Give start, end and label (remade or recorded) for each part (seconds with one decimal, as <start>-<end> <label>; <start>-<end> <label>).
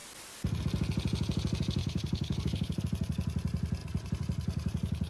0.0-1.8 recorded; 1.8-2.8 remade; 2.8-5.1 recorded